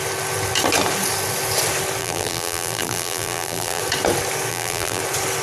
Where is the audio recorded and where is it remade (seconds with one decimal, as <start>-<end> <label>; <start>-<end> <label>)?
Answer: 0.0-2.0 recorded; 2.0-3.8 remade; 3.8-4.5 recorded; 4.5-5.0 remade; 5.0-5.4 recorded

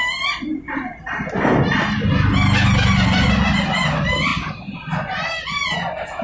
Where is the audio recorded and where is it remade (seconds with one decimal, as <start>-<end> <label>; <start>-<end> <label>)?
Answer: 0.0-6.2 recorded